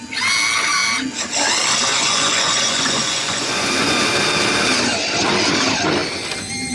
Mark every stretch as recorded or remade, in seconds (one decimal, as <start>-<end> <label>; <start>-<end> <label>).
0.0-1.9 recorded; 1.9-4.0 remade; 4.0-6.7 recorded